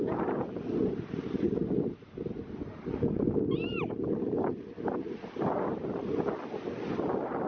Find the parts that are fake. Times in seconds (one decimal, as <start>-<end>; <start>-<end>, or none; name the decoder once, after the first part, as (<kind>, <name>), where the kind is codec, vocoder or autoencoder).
none